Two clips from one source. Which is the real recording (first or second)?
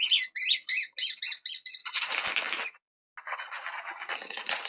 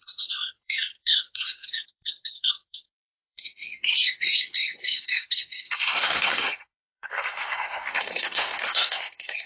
first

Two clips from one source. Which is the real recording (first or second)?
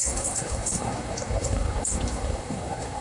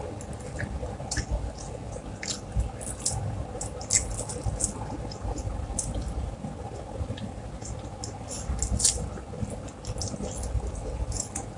second